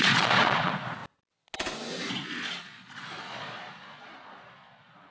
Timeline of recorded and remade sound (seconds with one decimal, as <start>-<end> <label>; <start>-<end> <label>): 0.0-1.0 remade; 1.0-2.1 recorded; 2.1-5.1 remade